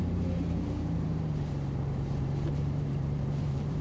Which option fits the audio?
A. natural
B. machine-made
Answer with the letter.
B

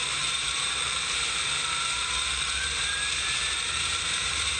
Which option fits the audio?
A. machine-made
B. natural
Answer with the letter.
A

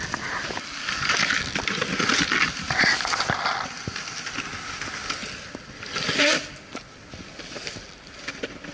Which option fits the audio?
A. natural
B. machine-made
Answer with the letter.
A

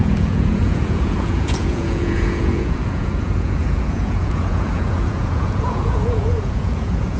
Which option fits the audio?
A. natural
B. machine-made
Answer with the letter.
B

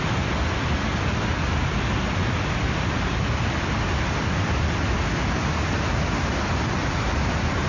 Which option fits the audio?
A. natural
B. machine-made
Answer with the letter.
A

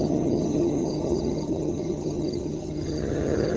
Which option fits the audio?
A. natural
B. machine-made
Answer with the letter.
B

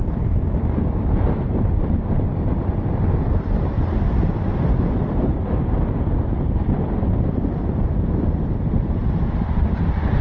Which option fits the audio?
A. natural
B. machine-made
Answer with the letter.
A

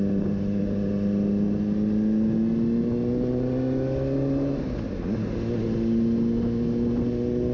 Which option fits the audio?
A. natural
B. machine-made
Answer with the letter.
A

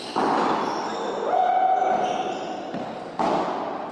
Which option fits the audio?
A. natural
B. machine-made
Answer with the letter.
A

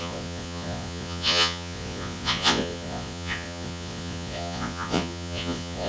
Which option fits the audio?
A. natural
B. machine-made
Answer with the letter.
B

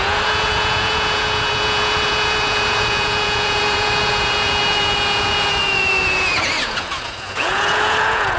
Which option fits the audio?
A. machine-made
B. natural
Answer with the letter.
A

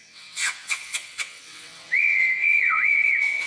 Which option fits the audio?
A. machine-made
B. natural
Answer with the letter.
A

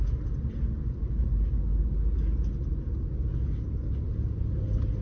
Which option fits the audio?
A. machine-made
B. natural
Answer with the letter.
B